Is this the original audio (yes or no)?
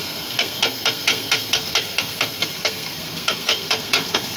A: no